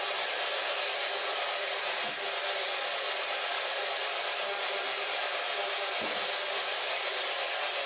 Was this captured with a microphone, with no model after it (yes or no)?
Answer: yes